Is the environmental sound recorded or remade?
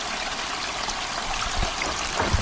recorded